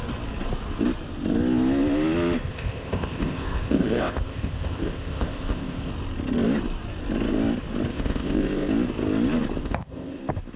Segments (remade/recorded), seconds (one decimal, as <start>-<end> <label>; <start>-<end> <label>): 0.0-2.5 recorded; 2.5-5.9 remade; 5.9-7.9 recorded; 7.9-8.7 remade; 8.7-9.6 recorded; 9.6-10.2 remade; 10.2-10.6 recorded